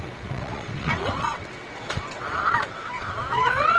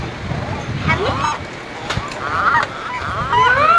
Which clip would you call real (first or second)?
second